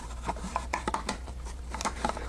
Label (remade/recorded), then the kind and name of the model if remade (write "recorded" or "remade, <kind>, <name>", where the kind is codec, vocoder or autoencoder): remade, vocoder, BigVGAN v2